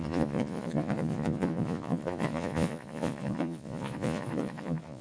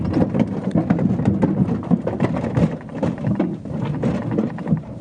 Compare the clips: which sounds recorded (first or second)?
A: second